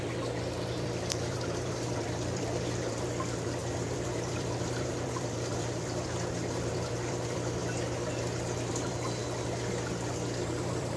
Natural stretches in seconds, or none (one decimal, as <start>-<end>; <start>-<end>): 7.6-8.7; 9.2-10.6